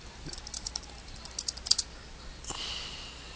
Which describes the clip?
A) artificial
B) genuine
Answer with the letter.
B